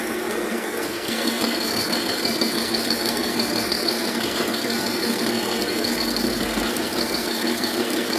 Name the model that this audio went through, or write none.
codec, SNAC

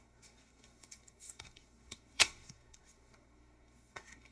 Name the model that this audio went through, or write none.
codec, SNAC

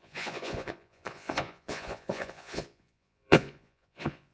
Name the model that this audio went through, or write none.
vocoder, Vocos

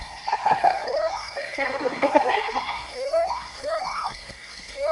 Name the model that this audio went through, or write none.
codec, SNAC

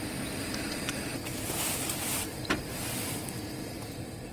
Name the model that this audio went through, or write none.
none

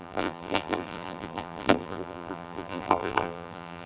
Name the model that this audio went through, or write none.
vocoder, BigVGAN v2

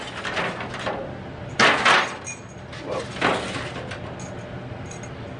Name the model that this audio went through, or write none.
none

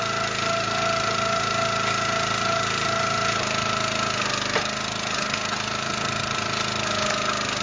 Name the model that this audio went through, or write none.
none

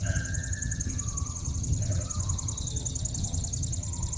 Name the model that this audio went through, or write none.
vocoder, HiFi-GAN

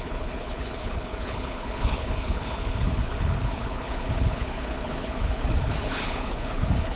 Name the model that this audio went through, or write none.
codec, HILCodec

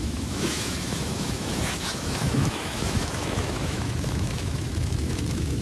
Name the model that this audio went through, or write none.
autoencoder, DAC-VAE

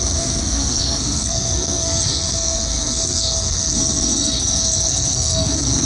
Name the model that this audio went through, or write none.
codec, SNAC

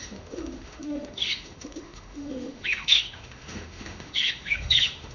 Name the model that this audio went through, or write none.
autoencoder, DAC-VAE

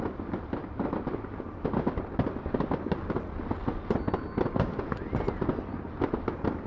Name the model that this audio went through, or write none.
none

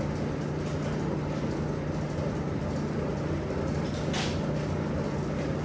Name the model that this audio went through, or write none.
none